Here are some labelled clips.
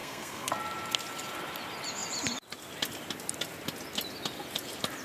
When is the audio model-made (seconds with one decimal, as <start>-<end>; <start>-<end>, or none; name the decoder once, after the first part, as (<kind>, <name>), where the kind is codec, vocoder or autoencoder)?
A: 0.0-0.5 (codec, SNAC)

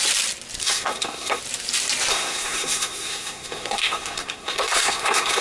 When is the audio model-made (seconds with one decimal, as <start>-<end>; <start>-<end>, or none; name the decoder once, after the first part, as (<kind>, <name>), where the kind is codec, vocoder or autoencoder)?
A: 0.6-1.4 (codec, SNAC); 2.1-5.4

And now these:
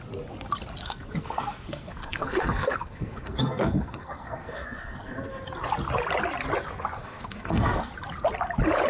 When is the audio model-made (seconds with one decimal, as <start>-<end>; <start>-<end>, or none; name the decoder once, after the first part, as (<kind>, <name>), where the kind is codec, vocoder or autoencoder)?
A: 0.8-5.3 (codec, SNAC); 7.0-7.9

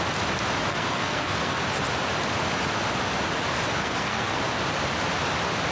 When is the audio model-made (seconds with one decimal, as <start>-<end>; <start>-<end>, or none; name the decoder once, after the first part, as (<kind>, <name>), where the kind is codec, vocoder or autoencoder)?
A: 0.7-1.6 (codec, SNAC); 3.8-4.4

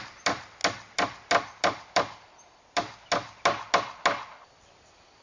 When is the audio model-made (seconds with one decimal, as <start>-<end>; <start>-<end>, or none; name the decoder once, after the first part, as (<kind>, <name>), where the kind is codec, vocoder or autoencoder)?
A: none

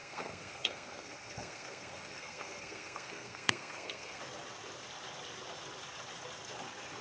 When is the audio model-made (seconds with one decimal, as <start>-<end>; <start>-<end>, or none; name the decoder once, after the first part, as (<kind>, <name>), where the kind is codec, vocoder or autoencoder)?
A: 0.0-4.2 (codec, SNAC)